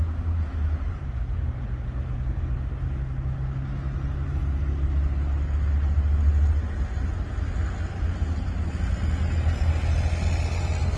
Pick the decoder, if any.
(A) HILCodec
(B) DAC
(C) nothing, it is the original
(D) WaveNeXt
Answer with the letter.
C